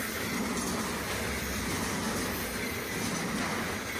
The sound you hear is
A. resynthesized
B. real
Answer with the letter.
B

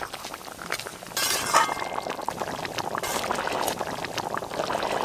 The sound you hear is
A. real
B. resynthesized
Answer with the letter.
A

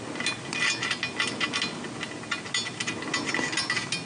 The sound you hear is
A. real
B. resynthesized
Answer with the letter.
A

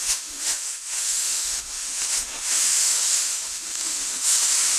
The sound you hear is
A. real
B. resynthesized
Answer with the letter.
B